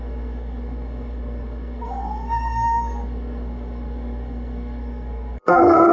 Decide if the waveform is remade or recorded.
remade